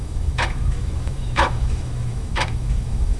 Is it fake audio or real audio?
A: fake